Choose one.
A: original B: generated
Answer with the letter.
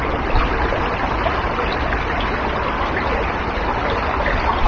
A